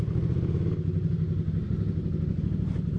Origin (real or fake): real